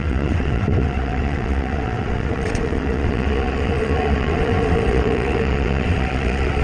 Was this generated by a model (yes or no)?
yes